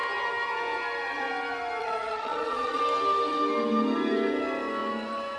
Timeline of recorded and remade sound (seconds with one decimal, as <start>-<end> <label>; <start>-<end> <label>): 0.0-1.8 recorded; 1.8-2.8 remade; 2.8-5.4 recorded